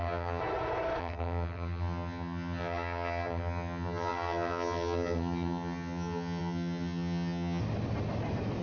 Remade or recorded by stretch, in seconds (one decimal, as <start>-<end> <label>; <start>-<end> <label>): 0.0-0.4 remade; 0.4-1.0 recorded; 1.0-7.6 remade; 7.6-8.6 recorded